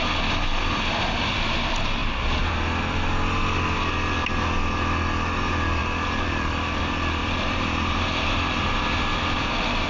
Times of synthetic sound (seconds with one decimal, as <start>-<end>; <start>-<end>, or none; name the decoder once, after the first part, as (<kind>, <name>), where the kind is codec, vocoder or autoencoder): 5.8-6.8 (vocoder, BigVGAN v2); 7.2-9.5